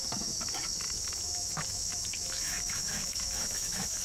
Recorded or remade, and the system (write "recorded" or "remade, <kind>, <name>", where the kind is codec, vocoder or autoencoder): remade, autoencoder, DAC-VAE